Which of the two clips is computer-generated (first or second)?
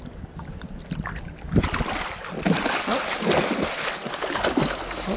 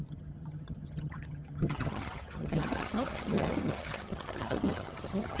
second